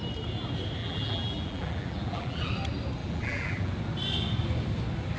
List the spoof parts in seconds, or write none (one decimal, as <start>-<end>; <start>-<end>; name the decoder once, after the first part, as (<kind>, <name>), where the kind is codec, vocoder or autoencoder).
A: 0.8-2.5 (vocoder, BigVGAN v2); 3.0-3.7